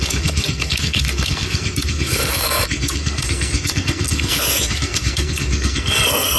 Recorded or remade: remade